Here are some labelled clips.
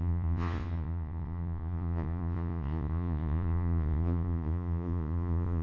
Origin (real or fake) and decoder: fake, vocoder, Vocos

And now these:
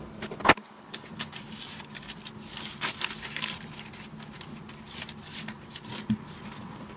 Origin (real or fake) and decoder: real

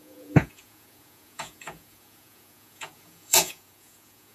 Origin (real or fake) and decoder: fake, vocoder, Vocos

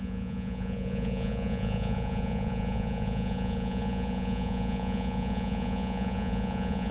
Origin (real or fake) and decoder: fake, vocoder, Vocos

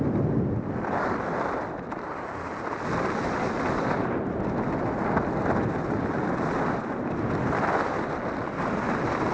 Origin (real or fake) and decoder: real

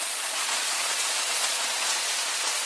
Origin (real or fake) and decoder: fake, vocoder, Vocos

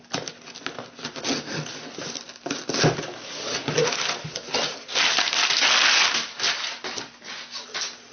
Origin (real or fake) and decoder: real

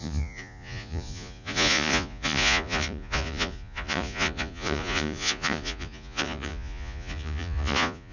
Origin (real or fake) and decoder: fake, vocoder, Vocos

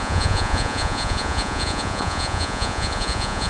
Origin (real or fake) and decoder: fake, vocoder, Vocos